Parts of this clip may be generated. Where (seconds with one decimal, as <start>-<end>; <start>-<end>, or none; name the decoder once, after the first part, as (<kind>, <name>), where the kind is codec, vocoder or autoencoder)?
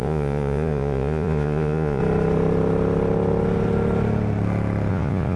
0.0-2.0 (vocoder, Vocos); 4.9-5.4